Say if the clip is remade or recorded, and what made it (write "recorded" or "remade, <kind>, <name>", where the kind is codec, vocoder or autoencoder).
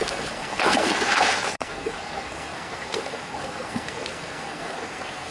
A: remade, codec, SNAC